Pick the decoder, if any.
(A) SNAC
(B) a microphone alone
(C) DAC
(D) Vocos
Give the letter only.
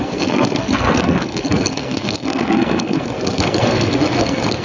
A